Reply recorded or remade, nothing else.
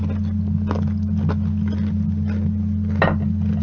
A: recorded